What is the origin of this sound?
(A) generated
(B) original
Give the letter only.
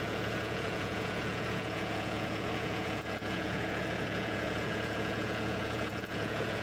A